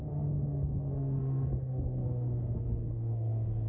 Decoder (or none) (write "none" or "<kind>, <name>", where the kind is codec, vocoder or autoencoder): codec, SNAC